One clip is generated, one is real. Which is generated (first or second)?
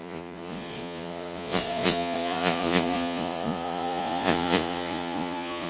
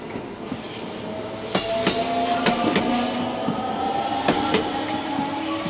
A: first